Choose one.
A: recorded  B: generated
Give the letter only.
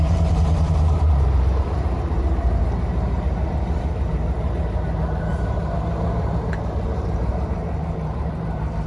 B